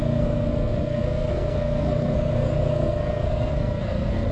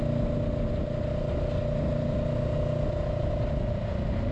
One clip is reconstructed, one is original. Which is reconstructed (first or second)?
first